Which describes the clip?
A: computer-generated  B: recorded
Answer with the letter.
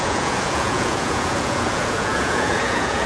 A